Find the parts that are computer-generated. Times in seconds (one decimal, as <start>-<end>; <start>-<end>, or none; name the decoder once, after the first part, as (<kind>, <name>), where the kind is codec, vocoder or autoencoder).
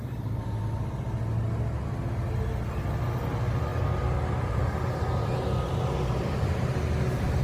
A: none